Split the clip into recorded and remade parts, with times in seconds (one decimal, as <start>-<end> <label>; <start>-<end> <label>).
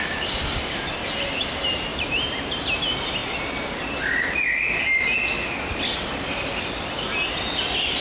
0.0-1.9 recorded; 1.9-2.8 remade; 2.8-8.0 recorded